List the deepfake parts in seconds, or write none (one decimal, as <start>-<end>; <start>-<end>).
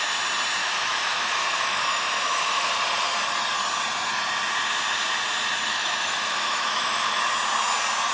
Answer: 0.6-2.7; 5.7-7.2